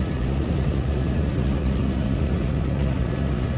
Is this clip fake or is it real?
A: fake